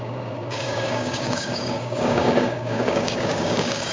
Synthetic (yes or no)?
yes